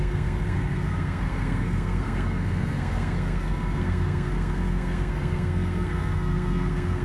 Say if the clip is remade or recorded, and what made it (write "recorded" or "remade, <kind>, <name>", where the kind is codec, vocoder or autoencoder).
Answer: remade, codec, SNAC